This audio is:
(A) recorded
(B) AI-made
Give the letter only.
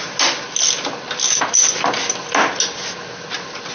A